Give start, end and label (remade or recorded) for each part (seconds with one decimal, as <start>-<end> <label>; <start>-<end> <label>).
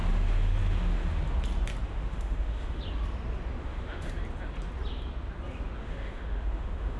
0.0-1.9 recorded; 1.9-2.8 remade; 2.8-3.6 recorded; 3.6-4.1 remade; 4.1-5.8 recorded; 5.8-7.0 remade